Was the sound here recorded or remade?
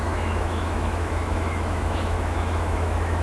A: remade